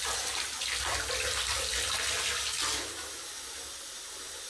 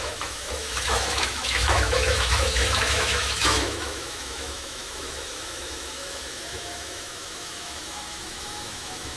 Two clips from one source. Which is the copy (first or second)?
second